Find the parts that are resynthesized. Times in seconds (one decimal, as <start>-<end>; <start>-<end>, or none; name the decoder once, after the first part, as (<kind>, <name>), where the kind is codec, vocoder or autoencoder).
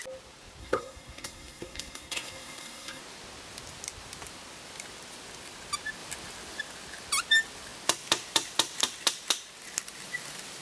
0.6-3.0 (codec, SNAC)